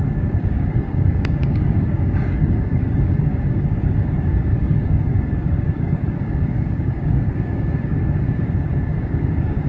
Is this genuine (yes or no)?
no